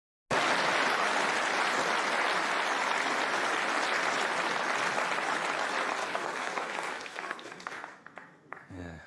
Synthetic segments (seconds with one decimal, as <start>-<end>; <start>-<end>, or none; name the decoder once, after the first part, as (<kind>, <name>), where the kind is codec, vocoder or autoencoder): 6.0-9.1 (codec, SNAC)